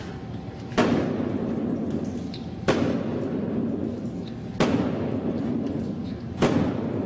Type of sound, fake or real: real